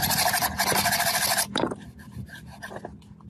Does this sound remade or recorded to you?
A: recorded